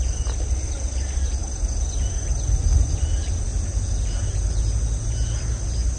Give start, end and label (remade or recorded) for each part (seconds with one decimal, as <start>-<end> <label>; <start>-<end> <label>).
0.0-6.0 recorded